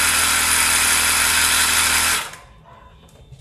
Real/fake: real